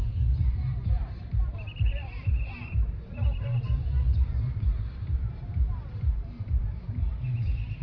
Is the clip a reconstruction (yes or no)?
yes